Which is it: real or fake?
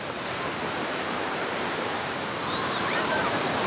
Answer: fake